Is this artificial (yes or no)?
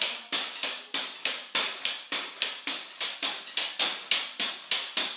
no